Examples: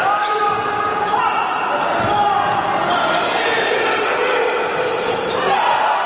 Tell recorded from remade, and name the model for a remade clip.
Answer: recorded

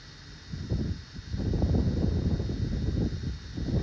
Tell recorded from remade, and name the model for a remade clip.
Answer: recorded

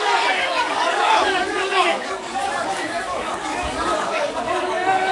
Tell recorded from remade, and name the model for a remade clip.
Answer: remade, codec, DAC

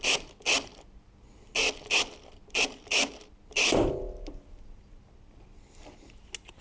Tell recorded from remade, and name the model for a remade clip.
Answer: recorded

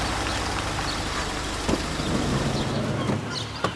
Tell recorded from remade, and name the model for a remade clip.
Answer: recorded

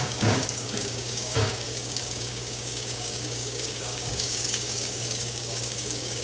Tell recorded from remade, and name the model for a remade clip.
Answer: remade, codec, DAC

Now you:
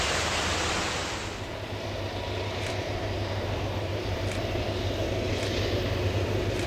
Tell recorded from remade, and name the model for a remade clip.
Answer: recorded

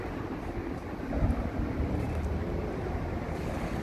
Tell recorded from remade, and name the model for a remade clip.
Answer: recorded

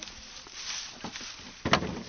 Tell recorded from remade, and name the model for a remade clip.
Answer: recorded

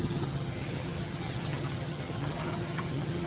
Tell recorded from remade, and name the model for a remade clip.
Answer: remade, vocoder, HiFi-GAN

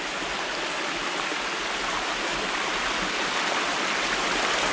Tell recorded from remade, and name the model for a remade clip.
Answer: recorded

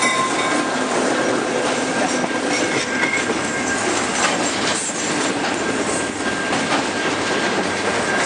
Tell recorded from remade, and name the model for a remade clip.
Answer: recorded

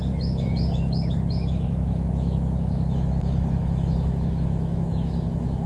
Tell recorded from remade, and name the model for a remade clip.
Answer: remade, autoencoder, DAC-VAE